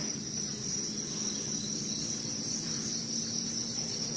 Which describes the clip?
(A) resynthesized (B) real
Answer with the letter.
B